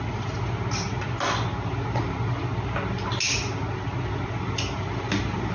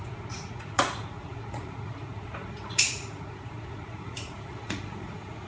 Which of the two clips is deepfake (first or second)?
second